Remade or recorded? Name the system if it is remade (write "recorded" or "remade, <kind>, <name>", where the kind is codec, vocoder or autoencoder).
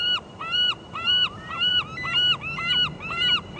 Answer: remade, vocoder, BigVGAN v2